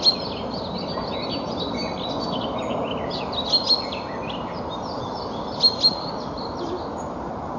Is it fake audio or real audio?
real